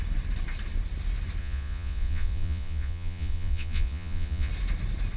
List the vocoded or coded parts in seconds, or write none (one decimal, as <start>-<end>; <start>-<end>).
1.4-4.5